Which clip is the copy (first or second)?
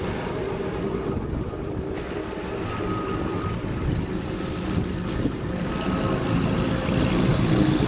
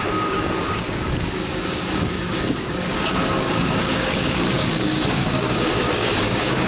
second